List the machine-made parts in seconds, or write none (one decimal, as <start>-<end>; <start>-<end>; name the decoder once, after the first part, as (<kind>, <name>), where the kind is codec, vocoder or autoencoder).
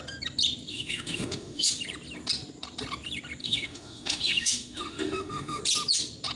0.7-1.7 (autoencoder, DAC-VAE); 3.4-5.6